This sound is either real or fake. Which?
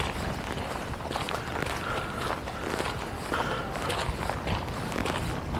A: real